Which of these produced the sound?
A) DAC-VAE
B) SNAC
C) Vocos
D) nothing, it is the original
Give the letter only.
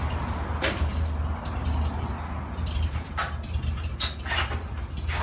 D